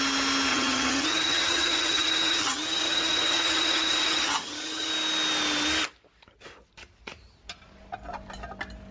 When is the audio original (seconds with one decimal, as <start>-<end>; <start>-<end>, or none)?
0.0-0.5; 4.9-8.9